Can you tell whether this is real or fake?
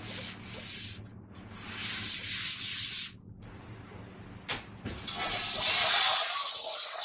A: real